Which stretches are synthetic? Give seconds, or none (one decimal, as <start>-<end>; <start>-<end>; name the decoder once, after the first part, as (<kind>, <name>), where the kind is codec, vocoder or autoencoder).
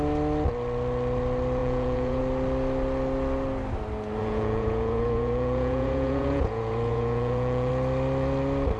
1.6-2.2 (vocoder, Vocos); 4.2-7.7